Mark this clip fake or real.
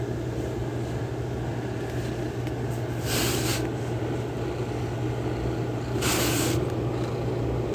real